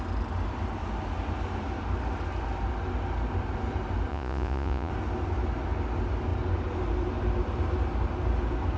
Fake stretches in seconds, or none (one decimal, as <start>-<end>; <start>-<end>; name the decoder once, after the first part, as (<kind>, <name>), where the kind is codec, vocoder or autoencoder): 4.1-4.9 (vocoder, Vocos)